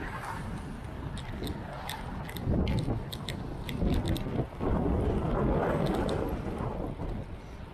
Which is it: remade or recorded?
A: recorded